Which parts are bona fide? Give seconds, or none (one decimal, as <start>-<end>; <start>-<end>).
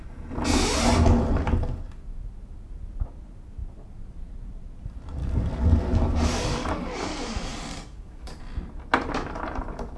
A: 0.0-5.2; 8.4-10.0